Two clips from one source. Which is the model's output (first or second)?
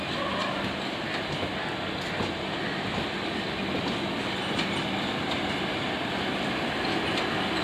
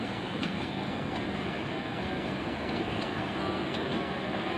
second